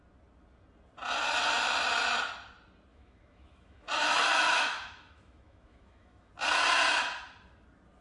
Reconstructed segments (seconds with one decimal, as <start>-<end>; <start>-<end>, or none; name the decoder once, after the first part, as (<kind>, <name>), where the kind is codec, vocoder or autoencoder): 2.9-6.3 (autoencoder, DAC-VAE)